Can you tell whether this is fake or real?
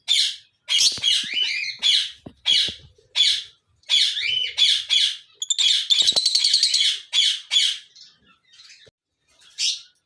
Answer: real